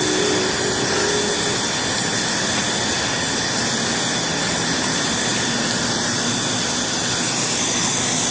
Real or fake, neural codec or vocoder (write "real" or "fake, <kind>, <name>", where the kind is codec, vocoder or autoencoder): real